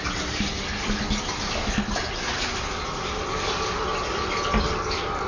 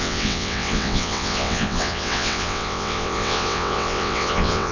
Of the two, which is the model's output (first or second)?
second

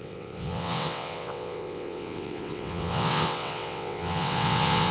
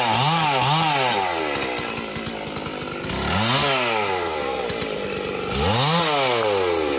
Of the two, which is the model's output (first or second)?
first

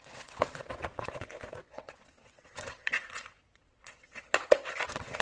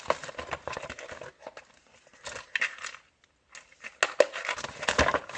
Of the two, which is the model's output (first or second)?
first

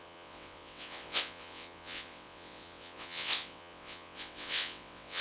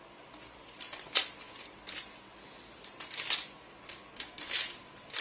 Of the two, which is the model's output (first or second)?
first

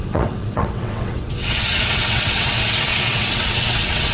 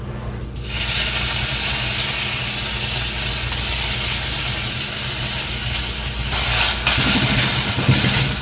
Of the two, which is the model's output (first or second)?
first